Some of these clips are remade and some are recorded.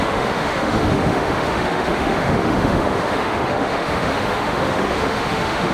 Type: remade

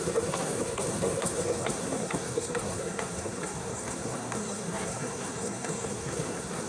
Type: remade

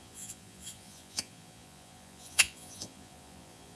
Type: remade